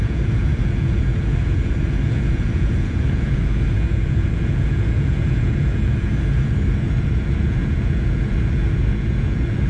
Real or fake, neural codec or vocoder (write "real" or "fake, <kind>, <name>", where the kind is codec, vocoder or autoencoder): fake, vocoder, Vocos